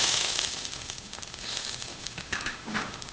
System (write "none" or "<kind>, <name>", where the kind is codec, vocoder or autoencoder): autoencoder, DAC-VAE